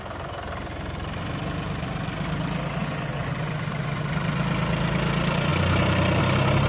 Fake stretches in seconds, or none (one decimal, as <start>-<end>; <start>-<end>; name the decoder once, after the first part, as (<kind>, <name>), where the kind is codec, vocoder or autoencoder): none